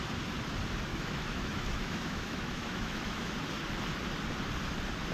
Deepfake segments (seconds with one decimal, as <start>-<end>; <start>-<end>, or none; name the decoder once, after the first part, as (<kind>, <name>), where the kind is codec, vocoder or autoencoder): 0.9-3.3 (autoencoder, DAC-VAE)